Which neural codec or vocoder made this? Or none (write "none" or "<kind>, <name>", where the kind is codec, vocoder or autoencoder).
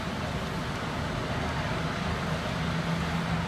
none